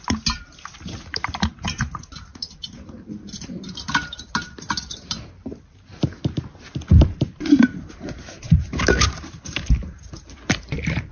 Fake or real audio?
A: fake